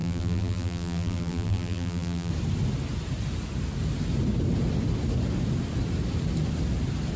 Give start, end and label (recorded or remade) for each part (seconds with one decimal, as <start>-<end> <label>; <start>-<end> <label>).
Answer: 0.0-2.3 remade; 2.3-7.2 recorded